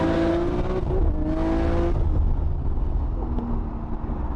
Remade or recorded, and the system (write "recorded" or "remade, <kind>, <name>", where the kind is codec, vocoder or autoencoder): recorded